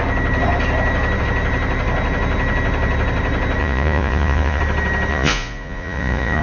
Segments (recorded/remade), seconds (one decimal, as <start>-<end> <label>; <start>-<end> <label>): 0.0-3.6 recorded; 3.6-4.6 remade; 4.6-5.1 recorded; 5.1-6.4 remade